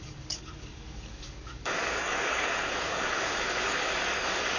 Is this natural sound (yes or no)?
no